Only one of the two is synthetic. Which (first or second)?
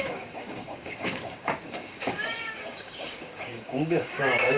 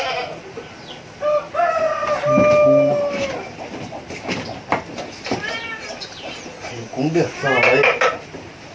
first